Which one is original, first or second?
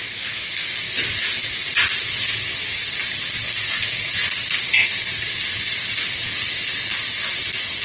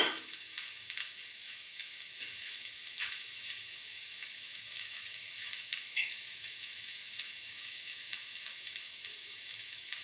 first